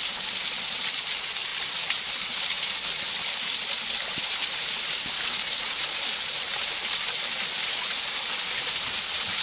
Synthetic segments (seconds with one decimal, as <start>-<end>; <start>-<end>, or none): none

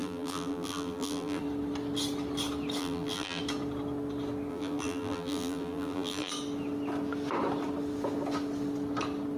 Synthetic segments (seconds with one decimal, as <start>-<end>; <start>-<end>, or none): 0.0-1.4; 2.8-3.4; 4.5-6.3

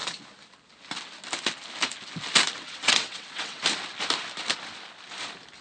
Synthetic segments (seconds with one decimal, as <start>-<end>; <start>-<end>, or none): 2.6-3.6

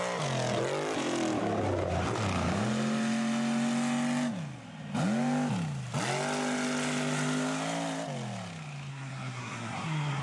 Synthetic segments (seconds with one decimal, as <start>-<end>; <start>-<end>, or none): 8.9-10.2

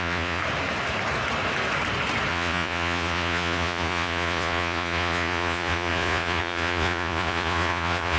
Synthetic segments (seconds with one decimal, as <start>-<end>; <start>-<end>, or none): 0.0-0.4; 2.3-8.2

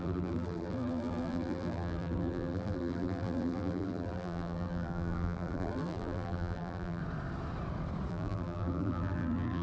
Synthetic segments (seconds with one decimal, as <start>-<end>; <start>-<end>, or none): 0.0-7.0; 8.1-9.6